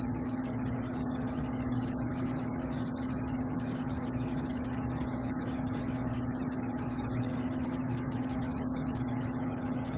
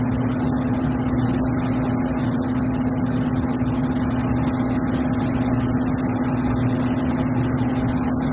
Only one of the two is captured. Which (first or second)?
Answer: second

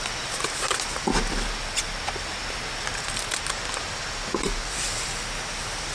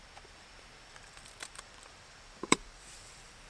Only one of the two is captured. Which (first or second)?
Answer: first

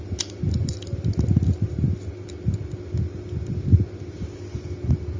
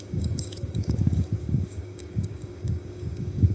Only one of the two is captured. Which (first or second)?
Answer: first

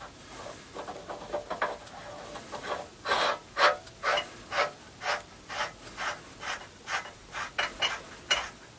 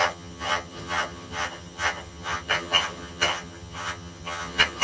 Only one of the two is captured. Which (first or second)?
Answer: first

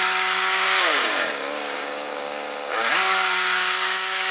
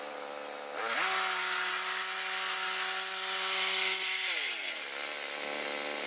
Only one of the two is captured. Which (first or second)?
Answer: second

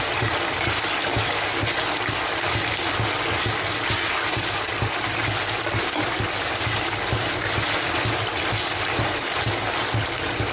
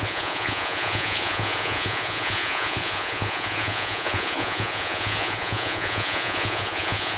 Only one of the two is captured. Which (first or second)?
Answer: first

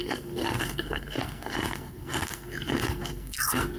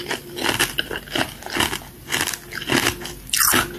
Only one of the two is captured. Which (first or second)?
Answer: second